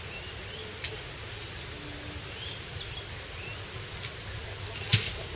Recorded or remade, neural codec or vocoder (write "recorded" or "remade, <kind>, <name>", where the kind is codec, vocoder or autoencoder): recorded